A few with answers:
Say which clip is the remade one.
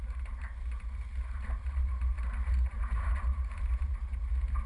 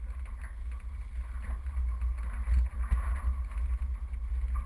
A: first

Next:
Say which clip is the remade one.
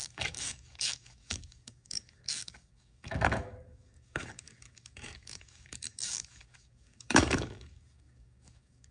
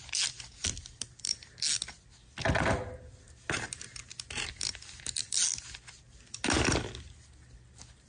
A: first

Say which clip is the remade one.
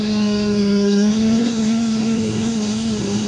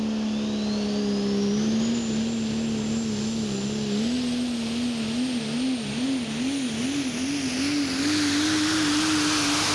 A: first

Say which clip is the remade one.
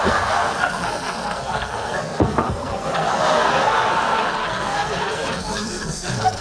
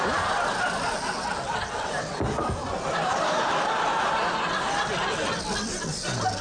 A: first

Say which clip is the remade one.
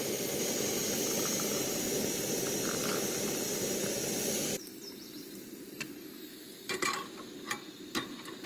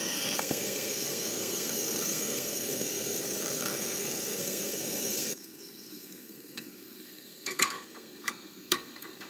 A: second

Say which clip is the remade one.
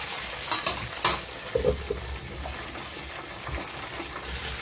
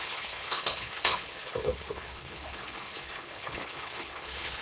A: second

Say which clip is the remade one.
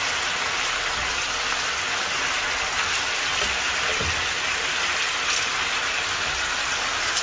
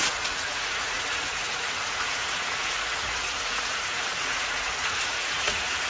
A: second